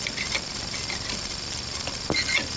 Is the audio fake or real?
real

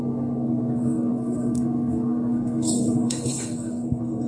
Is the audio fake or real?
fake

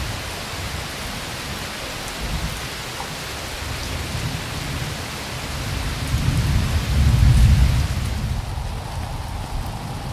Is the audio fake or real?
real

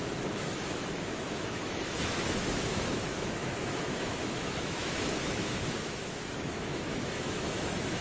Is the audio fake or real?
fake